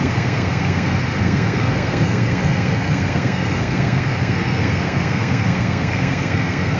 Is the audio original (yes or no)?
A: no